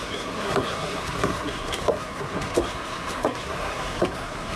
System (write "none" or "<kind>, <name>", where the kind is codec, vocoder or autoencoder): codec, SNAC